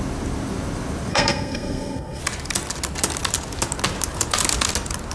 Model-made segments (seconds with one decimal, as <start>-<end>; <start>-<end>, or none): 1.1-2.2